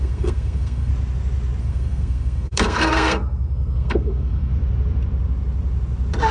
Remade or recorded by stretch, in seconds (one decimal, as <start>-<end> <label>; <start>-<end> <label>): 0.0-0.9 remade; 0.9-1.6 recorded; 1.6-4.5 remade; 4.5-6.3 recorded